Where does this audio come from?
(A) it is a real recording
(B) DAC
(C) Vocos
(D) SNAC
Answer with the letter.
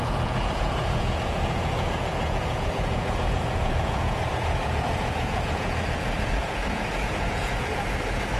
C